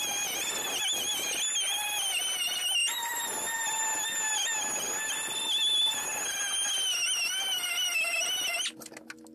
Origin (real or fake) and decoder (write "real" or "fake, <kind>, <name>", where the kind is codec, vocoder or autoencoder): real